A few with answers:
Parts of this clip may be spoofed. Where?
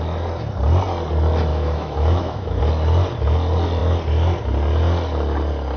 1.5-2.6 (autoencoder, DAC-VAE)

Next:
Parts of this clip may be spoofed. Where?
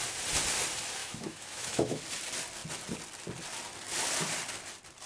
1.0-2.0 (autoencoder, DAC-VAE)